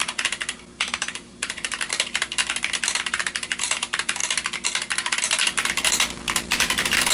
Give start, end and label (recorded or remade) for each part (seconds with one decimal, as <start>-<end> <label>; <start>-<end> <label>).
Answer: 0.0-2.4 remade; 2.4-3.0 recorded; 3.0-4.2 remade; 4.2-6.5 recorded; 6.5-7.1 remade